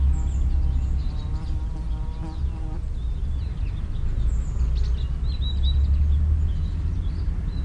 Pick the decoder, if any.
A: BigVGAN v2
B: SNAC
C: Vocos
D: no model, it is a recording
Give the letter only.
D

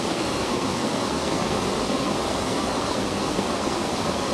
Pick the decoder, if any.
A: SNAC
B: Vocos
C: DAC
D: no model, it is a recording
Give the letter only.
A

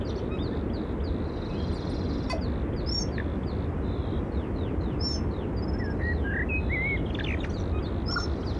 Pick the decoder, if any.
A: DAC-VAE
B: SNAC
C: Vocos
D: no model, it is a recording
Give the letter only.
D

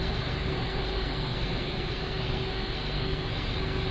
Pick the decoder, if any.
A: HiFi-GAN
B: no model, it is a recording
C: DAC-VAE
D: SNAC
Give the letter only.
D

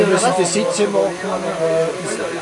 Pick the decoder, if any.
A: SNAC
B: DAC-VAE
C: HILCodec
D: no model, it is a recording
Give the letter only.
D